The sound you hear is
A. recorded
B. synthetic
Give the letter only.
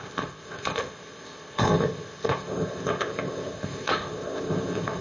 B